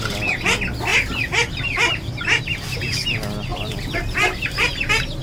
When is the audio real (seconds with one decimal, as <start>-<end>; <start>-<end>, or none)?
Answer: 0.0-0.9; 2.4-3.5; 4.7-5.2